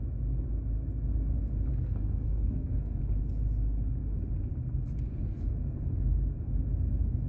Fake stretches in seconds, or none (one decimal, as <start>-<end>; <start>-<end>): 1.7-3.0